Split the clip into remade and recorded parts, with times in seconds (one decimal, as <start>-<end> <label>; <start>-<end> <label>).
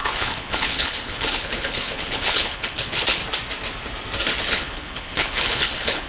0.0-3.2 remade; 3.2-4.4 recorded; 4.4-6.1 remade